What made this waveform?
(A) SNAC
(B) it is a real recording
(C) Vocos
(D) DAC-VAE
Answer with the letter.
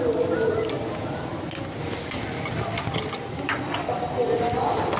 B